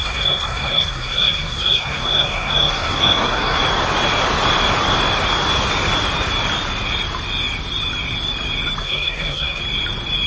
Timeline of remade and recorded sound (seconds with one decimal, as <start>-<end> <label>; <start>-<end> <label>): 0.0-3.6 remade; 3.6-8.8 recorded; 8.8-9.6 remade; 9.6-10.3 recorded